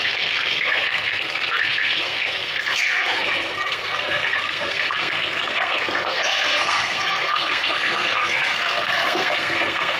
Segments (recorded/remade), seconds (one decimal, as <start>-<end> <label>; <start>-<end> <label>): 0.0-10.0 remade